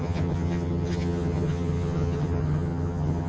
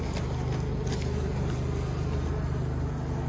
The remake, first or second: first